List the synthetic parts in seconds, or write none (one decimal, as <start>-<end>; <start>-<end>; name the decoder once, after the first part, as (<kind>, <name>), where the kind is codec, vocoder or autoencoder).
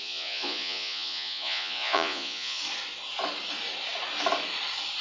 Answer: 0.0-2.6 (vocoder, Vocos)